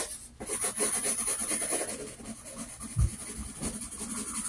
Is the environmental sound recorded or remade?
recorded